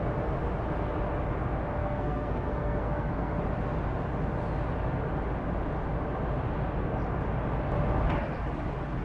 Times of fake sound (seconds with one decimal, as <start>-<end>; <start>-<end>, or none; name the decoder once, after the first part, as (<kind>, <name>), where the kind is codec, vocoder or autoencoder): 1.8-3.4 (codec, SNAC)

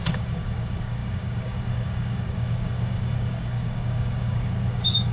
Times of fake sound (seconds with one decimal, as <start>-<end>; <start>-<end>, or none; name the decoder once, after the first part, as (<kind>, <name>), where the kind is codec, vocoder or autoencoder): 0.0-5.1 (codec, DAC)

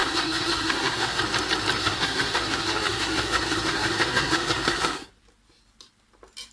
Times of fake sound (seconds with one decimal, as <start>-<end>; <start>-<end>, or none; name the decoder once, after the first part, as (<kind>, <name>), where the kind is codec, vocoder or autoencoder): 0.0-1.2 (codec, SNAC); 1.8-5.1